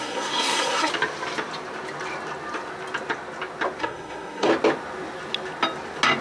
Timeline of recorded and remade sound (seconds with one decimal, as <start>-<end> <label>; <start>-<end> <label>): 0.0-0.9 remade; 0.9-3.8 recorded; 3.8-4.5 remade; 4.5-6.2 recorded